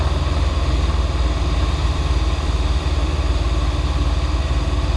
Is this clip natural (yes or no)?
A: yes